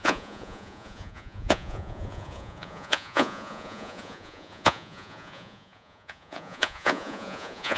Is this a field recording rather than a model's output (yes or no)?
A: no